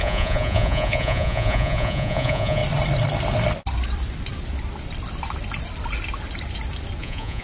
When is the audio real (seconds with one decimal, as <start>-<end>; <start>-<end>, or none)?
2.6-7.0